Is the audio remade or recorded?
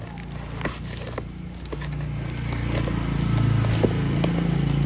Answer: recorded